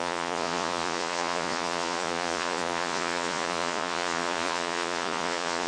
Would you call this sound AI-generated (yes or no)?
yes